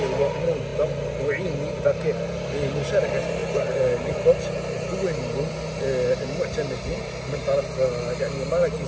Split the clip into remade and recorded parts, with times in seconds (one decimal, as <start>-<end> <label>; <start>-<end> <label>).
0.0-8.9 recorded